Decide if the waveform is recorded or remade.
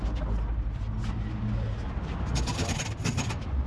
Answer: recorded